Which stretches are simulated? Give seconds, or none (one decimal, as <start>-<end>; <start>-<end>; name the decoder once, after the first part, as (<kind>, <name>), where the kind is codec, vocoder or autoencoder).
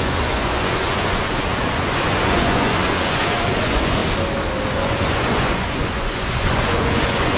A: 0.0-4.0 (vocoder, Vocos); 4.7-7.4